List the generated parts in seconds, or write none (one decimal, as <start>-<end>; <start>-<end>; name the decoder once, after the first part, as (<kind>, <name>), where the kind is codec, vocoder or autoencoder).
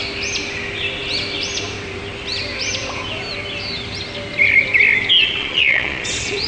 5.2-6.5 (vocoder, Vocos)